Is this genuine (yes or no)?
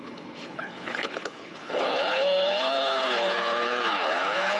no